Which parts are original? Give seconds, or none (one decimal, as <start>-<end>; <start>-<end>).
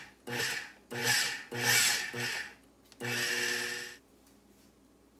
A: 0.0-5.2